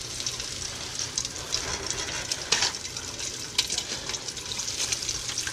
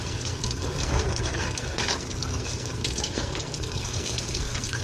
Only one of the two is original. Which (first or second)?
first